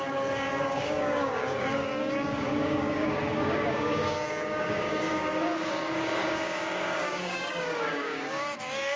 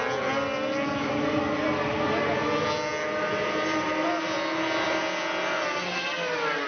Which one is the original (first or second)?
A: second